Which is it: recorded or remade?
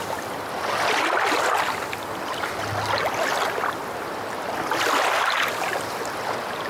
recorded